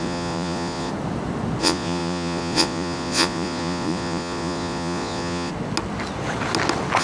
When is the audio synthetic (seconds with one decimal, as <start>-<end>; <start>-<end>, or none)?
0.0-0.9; 1.6-5.5